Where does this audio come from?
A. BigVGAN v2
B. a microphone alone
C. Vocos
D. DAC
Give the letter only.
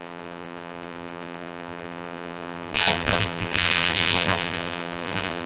A